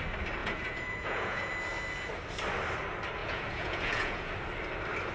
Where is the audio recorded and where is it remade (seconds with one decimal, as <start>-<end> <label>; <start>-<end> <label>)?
0.0-0.4 recorded; 0.4-1.5 remade; 1.5-3.2 recorded; 3.2-4.3 remade; 4.3-5.1 recorded